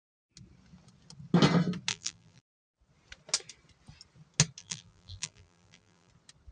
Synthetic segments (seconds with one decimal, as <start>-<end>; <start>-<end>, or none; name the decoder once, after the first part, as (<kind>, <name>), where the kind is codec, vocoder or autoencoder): 1.9-2.6 (vocoder, BigVGAN v2); 4.6-6.1

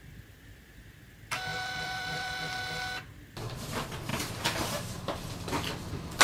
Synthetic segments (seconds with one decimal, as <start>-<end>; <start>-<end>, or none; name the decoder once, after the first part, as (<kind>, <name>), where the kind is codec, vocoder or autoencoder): 1.5-2.6 (vocoder, BigVGAN v2); 4.1-5.5